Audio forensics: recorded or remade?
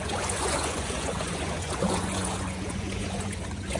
remade